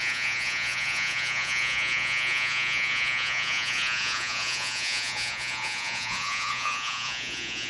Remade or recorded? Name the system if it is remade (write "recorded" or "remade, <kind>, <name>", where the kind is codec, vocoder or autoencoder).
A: remade, vocoder, Vocos